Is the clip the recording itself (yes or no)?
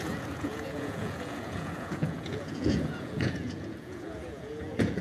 no